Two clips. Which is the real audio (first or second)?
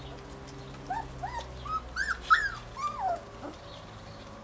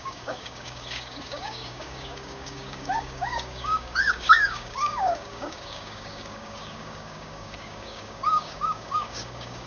first